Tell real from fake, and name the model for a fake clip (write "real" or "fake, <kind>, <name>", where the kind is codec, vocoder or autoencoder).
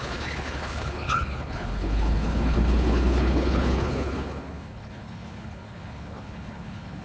fake, codec, HILCodec